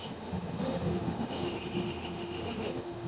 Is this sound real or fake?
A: fake